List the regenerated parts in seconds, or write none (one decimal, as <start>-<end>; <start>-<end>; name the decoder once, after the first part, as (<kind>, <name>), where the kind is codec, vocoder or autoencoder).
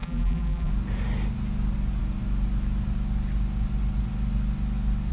0.0-0.7 (vocoder, BigVGAN v2)